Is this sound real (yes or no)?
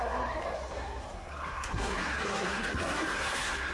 no